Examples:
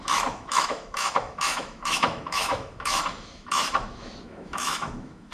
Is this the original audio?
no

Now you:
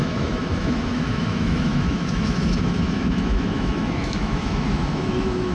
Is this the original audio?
no